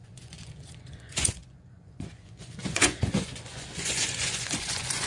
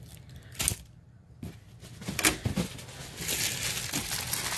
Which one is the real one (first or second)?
second